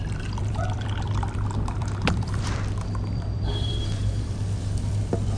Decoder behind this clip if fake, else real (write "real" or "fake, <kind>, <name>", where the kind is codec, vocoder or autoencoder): fake, vocoder, BigVGAN v2